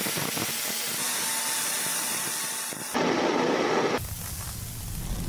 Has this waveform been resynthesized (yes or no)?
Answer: no